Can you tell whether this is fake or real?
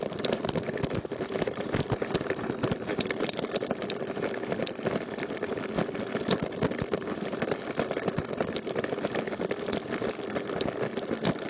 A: real